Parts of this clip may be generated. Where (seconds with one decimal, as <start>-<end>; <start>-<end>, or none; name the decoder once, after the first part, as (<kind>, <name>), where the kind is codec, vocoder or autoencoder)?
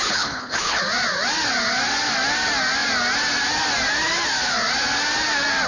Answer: 0.0-0.8 (codec, HILCodec)